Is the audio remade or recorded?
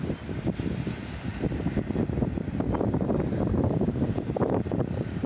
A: remade